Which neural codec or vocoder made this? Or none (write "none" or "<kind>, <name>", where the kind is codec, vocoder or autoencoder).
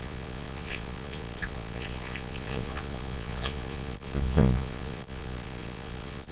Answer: vocoder, Vocos